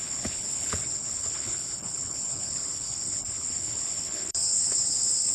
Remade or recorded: remade